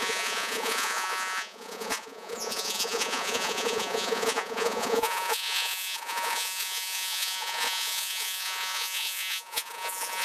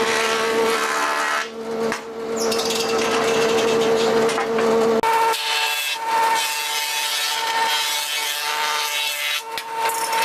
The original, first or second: second